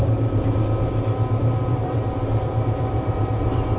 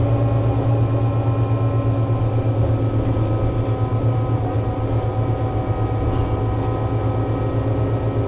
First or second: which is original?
second